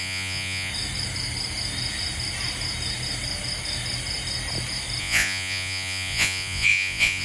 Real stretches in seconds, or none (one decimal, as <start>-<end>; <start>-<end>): 0.7-5.0

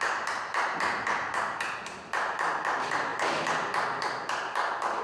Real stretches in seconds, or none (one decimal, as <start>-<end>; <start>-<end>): 0.0-5.0

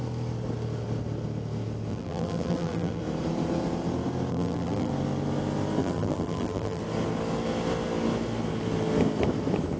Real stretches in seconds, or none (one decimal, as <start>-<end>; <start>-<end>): 0.0-1.9; 3.0-4.3; 4.9-5.8; 6.8-9.8

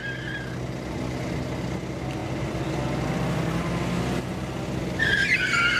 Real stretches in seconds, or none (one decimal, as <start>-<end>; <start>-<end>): 0.0-5.8

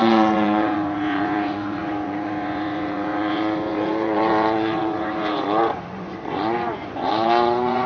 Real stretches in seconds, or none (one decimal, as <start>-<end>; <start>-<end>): none

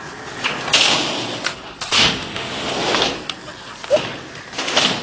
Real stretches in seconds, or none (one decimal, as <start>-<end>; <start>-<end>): 0.0-1.9; 2.7-5.0